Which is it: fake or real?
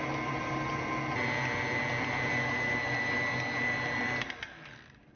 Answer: real